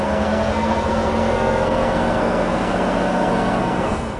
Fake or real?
fake